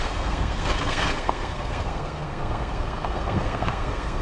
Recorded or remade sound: remade